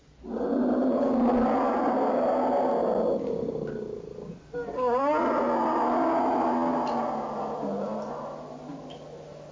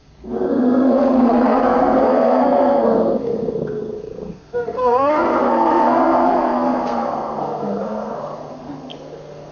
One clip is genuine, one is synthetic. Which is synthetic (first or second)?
second